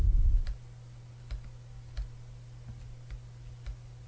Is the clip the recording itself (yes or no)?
yes